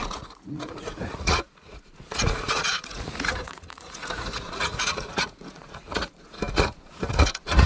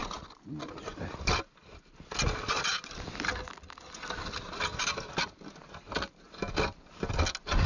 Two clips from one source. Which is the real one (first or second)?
second